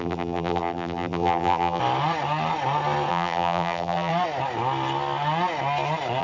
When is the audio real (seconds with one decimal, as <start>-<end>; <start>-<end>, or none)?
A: 1.8-3.1; 4.1-6.2